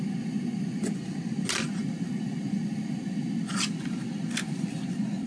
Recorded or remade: recorded